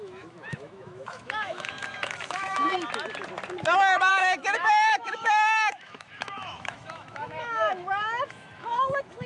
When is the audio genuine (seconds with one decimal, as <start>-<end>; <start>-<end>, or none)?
2.7-4.1